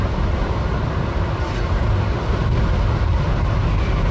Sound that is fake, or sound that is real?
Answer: real